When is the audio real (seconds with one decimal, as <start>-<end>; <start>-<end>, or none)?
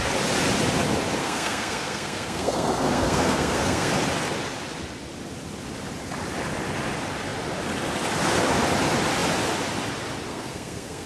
0.0-1.2; 3.9-10.3